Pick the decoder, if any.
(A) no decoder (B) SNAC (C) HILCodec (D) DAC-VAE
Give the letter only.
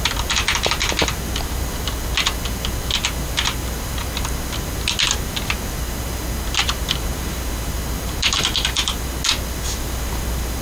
A